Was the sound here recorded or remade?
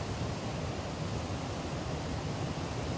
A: recorded